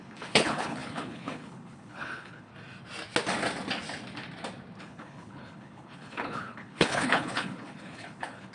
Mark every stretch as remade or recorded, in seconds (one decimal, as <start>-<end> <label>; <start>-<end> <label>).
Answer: 0.0-2.5 remade; 2.5-4.8 recorded; 4.8-8.5 remade

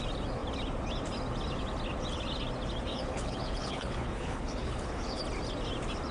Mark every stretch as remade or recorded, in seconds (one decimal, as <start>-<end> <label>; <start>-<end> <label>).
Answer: 0.0-2.9 recorded; 2.9-5.2 remade; 5.2-6.1 recorded

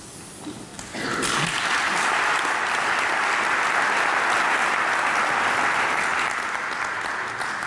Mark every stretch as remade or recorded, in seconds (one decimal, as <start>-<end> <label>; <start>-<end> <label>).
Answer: 0.0-7.7 recorded

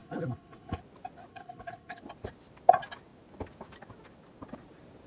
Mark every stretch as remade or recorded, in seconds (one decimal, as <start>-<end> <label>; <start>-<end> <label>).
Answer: 0.0-0.8 remade; 0.8-1.3 recorded; 1.3-2.0 remade; 2.0-5.1 recorded

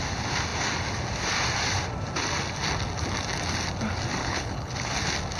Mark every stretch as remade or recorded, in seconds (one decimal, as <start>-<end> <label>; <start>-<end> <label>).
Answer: 0.0-4.2 recorded; 4.2-4.7 remade; 4.7-5.4 recorded

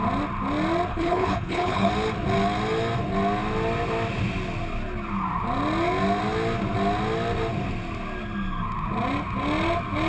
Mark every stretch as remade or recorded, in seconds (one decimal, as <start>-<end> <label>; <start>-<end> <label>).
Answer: 0.0-0.9 recorded; 0.9-1.9 remade; 1.9-10.1 recorded